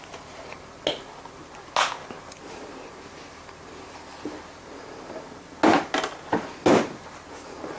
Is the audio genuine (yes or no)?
yes